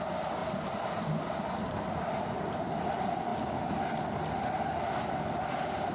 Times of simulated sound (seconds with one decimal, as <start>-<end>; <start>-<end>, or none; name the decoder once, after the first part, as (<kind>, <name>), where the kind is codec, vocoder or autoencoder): none

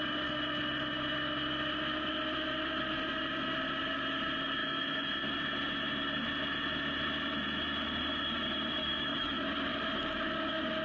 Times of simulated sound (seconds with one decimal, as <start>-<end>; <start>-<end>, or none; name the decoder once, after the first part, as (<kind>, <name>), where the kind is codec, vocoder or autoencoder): 4.6-5.2 (autoencoder, DAC-VAE); 8.8-9.5

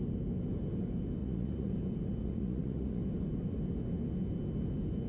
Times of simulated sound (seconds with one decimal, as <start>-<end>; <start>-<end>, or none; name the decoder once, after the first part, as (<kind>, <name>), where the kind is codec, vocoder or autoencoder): 1.2-1.7 (vocoder, Vocos); 2.2-3.0

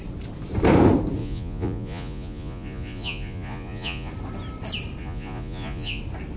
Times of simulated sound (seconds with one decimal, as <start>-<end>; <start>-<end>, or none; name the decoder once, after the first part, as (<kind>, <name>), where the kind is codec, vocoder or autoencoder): 1.2-4.1 (vocoder, Vocos); 5.0-6.0

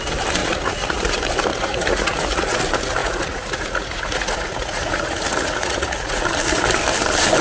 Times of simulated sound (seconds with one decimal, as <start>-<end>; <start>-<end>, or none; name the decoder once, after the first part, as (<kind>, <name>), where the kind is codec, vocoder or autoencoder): 0.4-1.1 (vocoder, Vocos); 1.5-2.6; 3.0-6.2

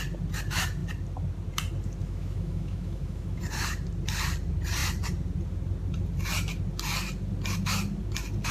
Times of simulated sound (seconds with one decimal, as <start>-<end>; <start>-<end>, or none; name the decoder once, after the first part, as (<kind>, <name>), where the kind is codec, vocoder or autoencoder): 2.0-3.4 (autoencoder, DAC-VAE)

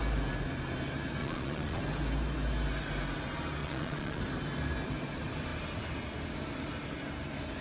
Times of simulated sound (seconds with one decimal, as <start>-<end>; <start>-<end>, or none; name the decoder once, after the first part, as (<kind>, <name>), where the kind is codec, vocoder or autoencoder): 1.2-1.8 (vocoder, Vocos); 3.6-4.2

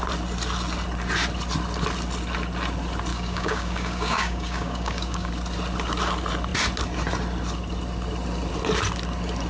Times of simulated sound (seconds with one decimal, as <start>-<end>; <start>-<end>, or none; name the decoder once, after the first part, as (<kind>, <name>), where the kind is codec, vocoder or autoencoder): 3.1-5.3 (codec, DAC)